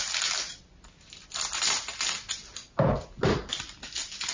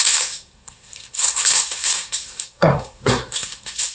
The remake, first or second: second